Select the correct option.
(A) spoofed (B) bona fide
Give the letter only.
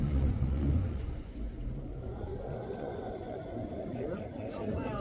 A